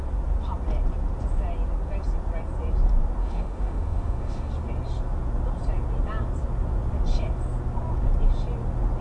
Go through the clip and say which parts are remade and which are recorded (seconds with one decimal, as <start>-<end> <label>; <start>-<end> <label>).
0.0-3.2 recorded; 3.2-4.5 remade; 4.5-9.0 recorded

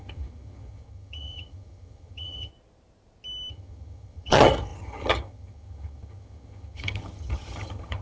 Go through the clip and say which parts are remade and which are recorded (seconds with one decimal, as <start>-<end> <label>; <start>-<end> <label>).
0.0-2.5 remade; 2.5-3.5 recorded; 3.5-8.0 remade

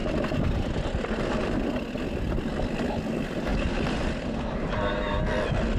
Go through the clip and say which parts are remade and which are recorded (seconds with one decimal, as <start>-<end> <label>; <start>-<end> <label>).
0.0-0.7 remade; 0.7-5.8 recorded

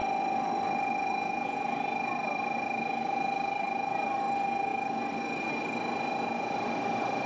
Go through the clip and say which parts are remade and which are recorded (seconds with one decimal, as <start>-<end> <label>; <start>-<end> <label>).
0.0-4.2 remade; 4.2-4.7 recorded; 4.7-5.5 remade; 5.5-7.3 recorded

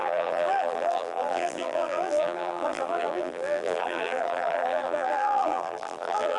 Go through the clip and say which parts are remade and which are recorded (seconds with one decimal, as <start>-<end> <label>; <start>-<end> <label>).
0.0-6.4 remade

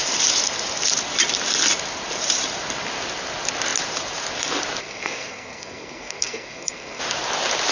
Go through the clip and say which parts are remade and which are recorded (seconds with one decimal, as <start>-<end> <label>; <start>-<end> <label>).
0.0-4.8 recorded; 4.8-7.0 remade; 7.0-7.7 recorded